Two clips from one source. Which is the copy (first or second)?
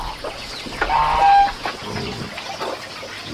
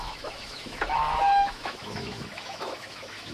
second